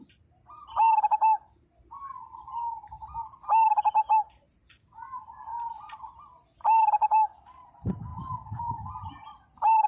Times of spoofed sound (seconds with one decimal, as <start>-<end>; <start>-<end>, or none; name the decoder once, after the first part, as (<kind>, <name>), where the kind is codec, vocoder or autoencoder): none